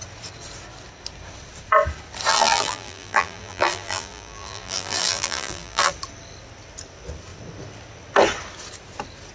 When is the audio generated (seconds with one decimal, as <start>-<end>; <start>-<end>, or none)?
2.3-5.9

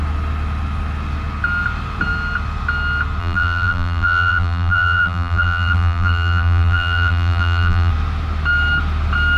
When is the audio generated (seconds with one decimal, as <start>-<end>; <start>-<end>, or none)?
3.2-7.9

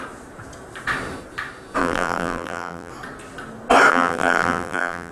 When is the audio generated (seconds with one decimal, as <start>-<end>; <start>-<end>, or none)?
1.8-2.9; 3.9-5.1